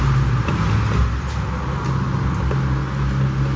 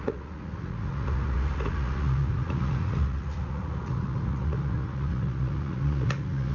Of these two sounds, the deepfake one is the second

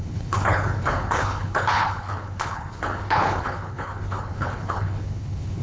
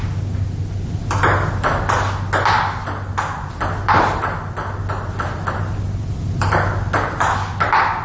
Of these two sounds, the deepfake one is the first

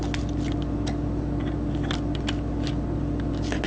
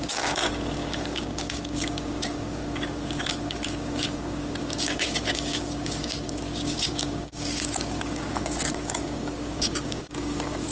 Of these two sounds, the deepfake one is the second